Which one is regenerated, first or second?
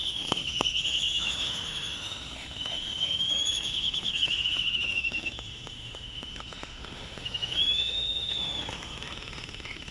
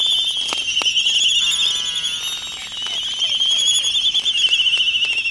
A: first